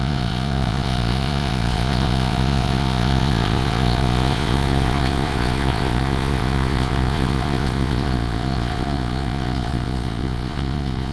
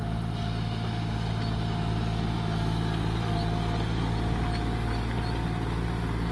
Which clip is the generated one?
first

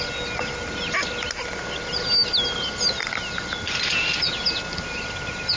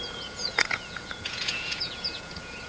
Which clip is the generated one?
second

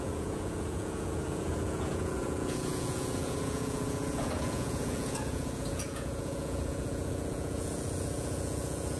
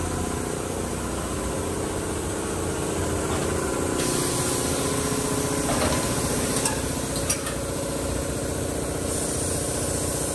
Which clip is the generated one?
first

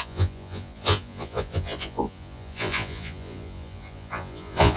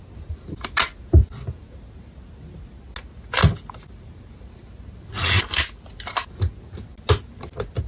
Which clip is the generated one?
first